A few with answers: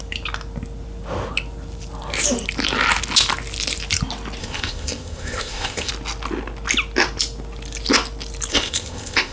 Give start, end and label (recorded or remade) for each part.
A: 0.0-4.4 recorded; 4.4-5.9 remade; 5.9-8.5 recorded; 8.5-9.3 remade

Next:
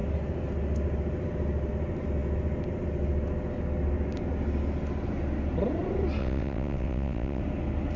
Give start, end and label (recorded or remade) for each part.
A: 0.0-6.2 recorded; 6.2-7.4 remade; 7.4-8.0 recorded

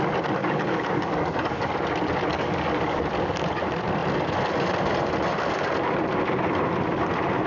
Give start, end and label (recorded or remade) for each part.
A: 0.0-0.4 recorded; 0.4-1.7 remade; 1.7-2.3 recorded; 2.3-3.0 remade; 3.0-7.5 recorded

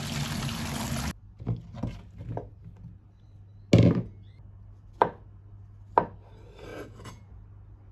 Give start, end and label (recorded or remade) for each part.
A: 0.0-6.7 recorded; 6.7-7.3 remade; 7.3-7.9 recorded

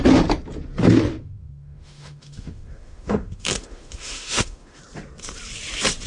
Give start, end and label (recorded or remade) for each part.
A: 0.0-1.1 recorded; 1.1-4.8 remade; 4.8-6.1 recorded

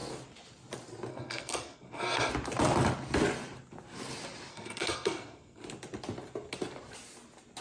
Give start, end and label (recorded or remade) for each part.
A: 0.0-1.1 recorded; 1.1-2.3 remade; 2.3-4.5 recorded; 4.5-5.6 remade; 5.6-7.6 recorded